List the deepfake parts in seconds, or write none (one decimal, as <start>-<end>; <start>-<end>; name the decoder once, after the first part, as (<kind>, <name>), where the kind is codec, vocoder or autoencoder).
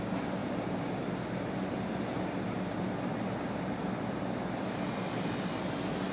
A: none